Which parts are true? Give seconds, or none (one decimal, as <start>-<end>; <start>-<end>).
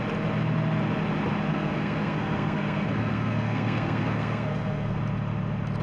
0.0-1.5; 5.0-5.8